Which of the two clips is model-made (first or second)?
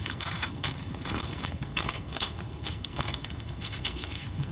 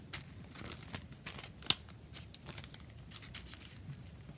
first